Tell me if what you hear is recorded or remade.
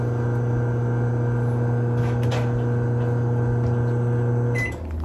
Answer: recorded